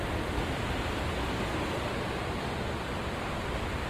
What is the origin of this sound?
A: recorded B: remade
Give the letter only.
A